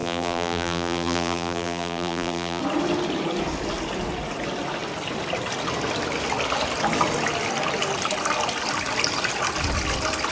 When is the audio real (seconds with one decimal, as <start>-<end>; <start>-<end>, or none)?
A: 2.6-10.3